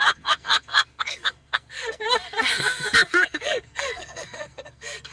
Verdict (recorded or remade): remade